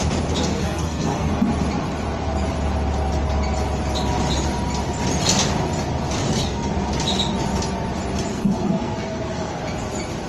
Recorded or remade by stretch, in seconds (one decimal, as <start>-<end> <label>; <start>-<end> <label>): 0.0-0.5 recorded; 0.5-1.3 remade; 1.3-6.2 recorded; 6.2-6.7 remade; 6.7-8.3 recorded; 8.3-9.6 remade; 9.6-10.3 recorded